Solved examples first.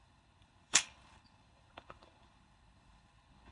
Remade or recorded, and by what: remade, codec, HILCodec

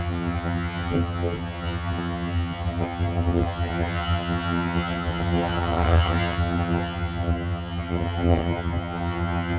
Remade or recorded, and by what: remade, vocoder, HiFi-GAN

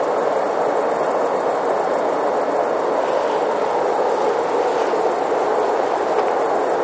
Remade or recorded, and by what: recorded